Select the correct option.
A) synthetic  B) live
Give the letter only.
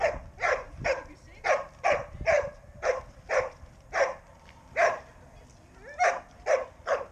A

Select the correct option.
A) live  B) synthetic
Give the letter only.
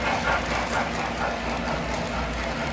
A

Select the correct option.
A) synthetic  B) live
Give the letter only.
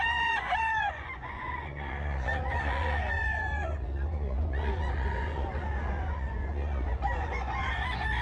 A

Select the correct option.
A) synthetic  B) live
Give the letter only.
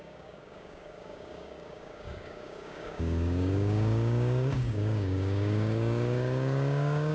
A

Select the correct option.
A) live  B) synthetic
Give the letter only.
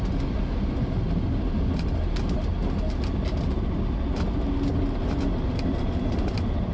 A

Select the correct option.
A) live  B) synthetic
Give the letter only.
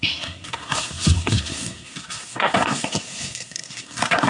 B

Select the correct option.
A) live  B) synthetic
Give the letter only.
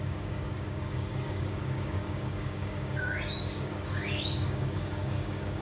B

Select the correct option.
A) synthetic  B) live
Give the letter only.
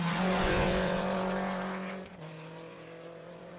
A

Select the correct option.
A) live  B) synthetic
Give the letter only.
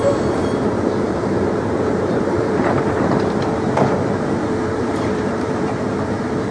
B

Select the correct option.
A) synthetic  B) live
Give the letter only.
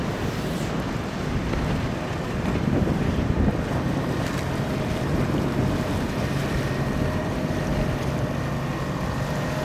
A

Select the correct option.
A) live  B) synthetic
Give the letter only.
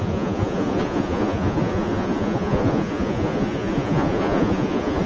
B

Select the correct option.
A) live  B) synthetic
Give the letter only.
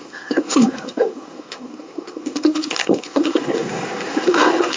B